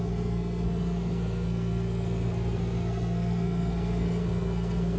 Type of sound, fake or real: fake